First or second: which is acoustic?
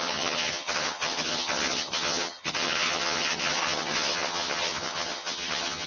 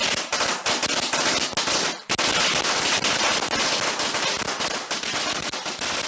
second